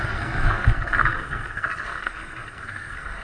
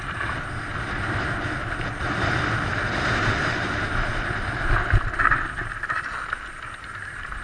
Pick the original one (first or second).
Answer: second